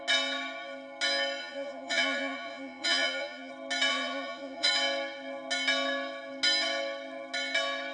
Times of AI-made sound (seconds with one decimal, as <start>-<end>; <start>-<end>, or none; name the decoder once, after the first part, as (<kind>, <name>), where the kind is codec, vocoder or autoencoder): 1.4-3.5 (vocoder, Vocos); 3.9-4.7